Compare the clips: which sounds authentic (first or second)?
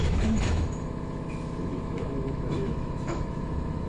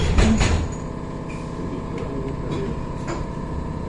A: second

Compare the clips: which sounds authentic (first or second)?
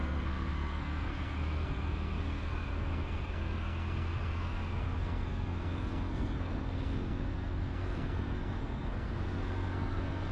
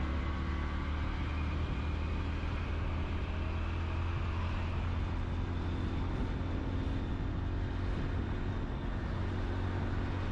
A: second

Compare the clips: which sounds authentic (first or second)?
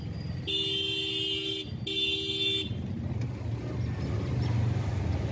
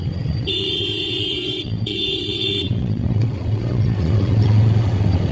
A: first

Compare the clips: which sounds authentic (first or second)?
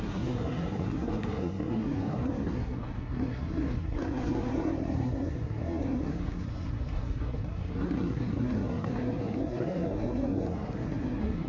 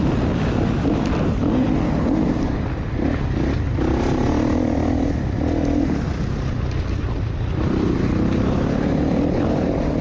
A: second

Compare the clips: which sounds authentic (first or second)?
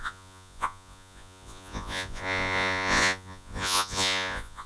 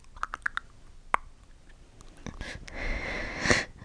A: second